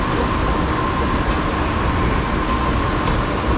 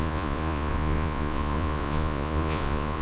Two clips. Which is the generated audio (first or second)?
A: second